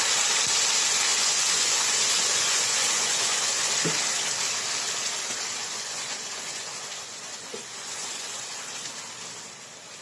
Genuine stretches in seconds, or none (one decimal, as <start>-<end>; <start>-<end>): 0.0-1.1; 3.7-5.6; 8.9-10.0